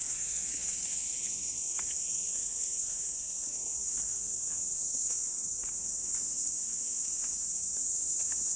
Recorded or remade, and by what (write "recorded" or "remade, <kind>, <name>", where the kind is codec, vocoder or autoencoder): remade, codec, SNAC